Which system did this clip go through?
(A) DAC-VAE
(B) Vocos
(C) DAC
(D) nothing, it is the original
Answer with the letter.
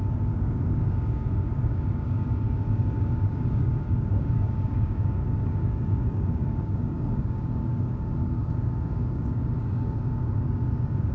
C